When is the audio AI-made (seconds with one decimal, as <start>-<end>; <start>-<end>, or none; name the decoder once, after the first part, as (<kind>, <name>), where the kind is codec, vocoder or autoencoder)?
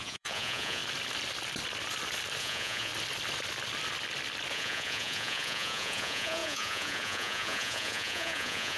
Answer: 0.0-0.8 (vocoder, Vocos); 2.4-2.9; 4.5-8.8